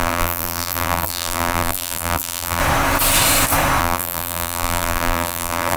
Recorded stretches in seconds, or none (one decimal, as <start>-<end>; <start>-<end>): 2.6-3.8